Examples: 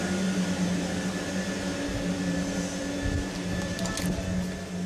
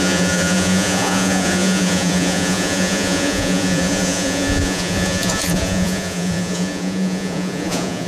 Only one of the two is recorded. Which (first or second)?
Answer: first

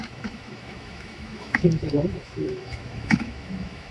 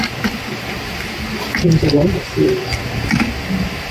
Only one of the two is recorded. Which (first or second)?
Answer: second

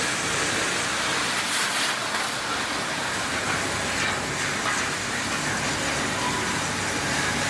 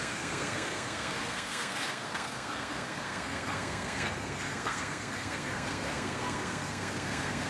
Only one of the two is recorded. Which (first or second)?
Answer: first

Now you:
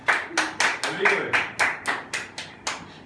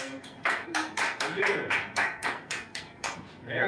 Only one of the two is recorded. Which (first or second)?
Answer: first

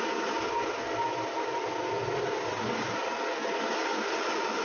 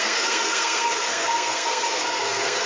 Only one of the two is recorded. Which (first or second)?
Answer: first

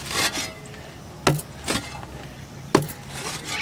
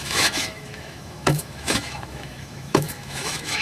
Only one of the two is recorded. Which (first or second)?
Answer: first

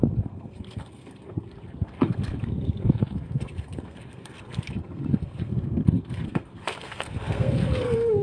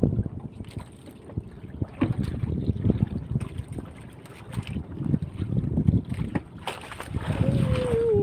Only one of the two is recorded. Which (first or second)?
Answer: second